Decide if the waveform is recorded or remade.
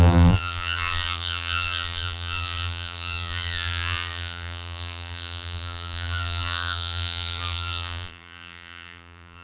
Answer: remade